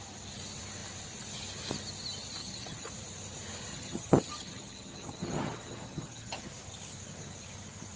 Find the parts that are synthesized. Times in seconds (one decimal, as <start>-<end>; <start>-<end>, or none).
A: 2.4-2.9; 3.7-6.5